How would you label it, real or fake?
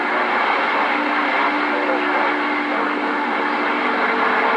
real